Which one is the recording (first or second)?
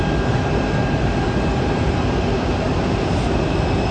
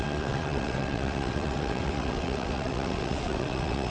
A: first